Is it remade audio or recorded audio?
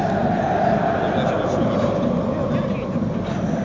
recorded